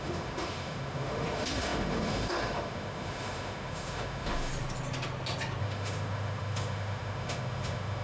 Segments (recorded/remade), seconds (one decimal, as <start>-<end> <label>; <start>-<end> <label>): 0.0-4.5 remade; 4.5-5.6 recorded; 5.6-8.0 remade